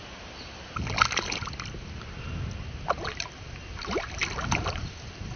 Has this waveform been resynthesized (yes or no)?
no